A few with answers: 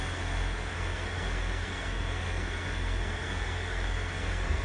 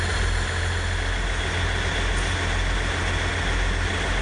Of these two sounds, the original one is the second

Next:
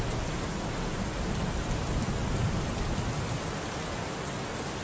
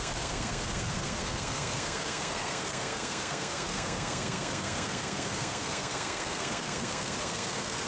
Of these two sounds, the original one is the first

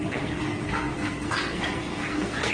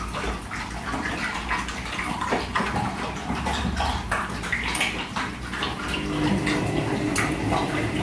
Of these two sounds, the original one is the second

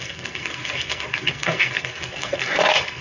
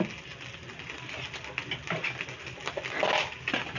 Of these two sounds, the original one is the second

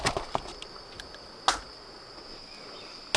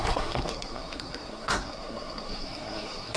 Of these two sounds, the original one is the first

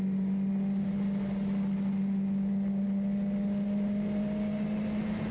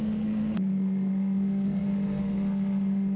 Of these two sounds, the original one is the first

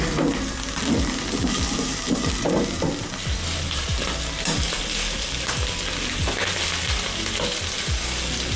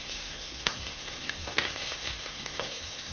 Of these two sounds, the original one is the first